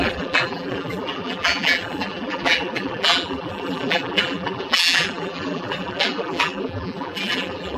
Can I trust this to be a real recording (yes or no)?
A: no